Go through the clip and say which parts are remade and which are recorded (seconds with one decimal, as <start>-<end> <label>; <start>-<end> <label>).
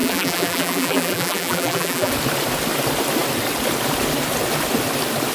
0.0-2.1 remade; 2.1-5.3 recorded